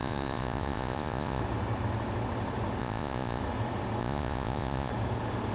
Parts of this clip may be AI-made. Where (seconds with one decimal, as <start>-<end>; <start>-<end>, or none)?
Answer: 0.0-1.4; 2.8-3.4; 4.0-4.9